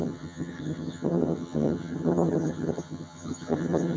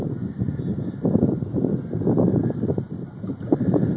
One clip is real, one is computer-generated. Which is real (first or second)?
second